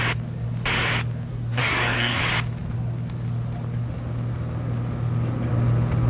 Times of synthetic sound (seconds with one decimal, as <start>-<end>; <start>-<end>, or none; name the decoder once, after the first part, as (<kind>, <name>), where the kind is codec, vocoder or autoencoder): 1.3-2.2 (codec, SNAC)